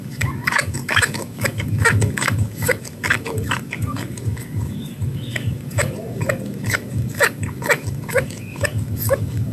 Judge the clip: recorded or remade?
remade